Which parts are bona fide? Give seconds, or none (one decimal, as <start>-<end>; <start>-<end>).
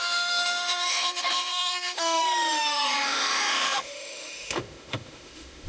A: none